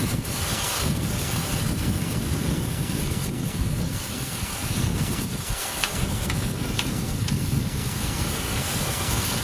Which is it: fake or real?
fake